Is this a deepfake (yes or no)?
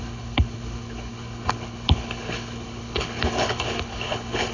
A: yes